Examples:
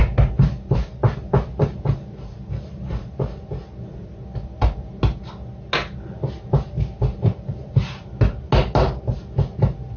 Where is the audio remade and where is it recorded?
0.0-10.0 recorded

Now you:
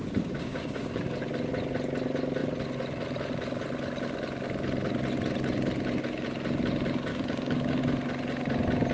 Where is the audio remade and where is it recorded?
0.0-1.0 remade; 1.0-7.1 recorded; 7.1-7.8 remade; 7.8-8.9 recorded

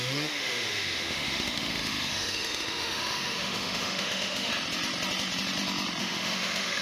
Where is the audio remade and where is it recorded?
0.0-4.5 remade; 4.5-6.0 recorded; 6.0-6.8 remade

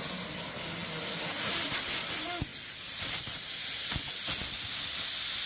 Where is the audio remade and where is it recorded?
0.0-5.5 recorded

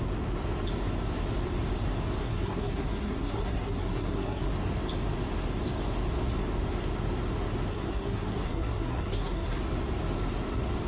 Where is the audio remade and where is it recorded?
0.0-2.2 recorded; 2.2-4.5 remade; 4.5-7.7 recorded; 7.7-9.6 remade; 9.6-10.9 recorded

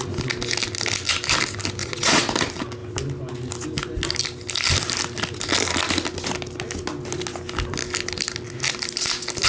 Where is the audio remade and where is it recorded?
0.0-1.8 recorded; 1.8-2.3 remade; 2.3-9.5 recorded

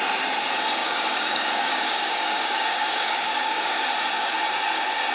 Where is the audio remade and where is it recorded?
0.0-0.8 recorded; 0.8-3.9 remade; 3.9-5.1 recorded